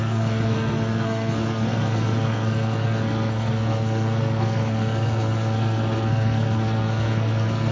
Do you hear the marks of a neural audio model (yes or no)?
yes